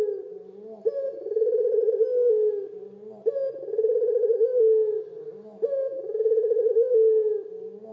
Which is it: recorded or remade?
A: recorded